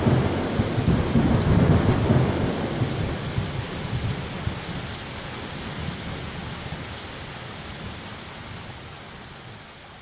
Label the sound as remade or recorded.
recorded